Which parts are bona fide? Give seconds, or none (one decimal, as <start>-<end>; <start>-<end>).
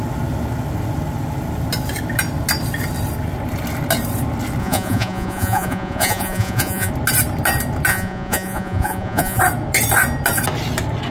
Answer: 0.0-4.6; 6.9-7.9; 9.4-11.1